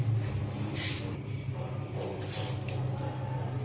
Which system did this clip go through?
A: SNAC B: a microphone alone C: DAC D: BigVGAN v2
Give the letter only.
B